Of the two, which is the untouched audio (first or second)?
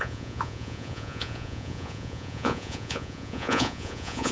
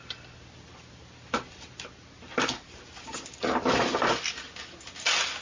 second